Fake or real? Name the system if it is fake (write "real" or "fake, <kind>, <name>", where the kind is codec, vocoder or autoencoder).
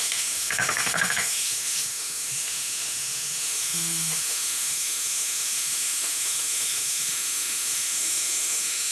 fake, autoencoder, DAC-VAE